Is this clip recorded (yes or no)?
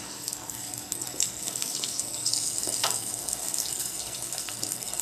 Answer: no